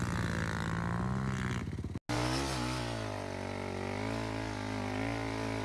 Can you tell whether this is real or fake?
real